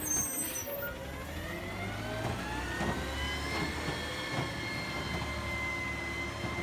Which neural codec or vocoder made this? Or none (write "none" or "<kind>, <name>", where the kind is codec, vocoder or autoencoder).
none